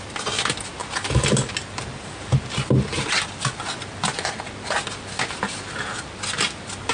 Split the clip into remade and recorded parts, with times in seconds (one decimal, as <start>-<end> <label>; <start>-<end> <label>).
0.0-6.9 recorded